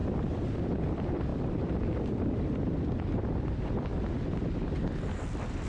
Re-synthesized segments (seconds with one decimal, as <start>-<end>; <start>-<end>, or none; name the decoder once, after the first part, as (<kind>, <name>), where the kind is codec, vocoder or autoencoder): 0.0-3.9 (vocoder, BigVGAN v2); 5.1-5.7